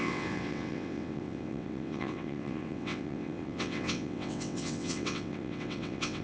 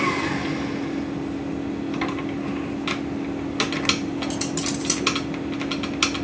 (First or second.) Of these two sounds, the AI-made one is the first